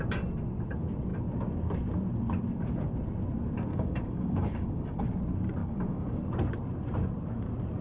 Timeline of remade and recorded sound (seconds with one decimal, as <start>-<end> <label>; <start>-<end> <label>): 0.0-3.7 recorded; 3.7-5.0 remade; 5.0-5.6 recorded; 5.6-6.2 remade; 6.2-7.8 recorded